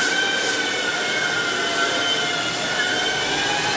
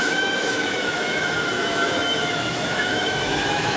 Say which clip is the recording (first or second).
first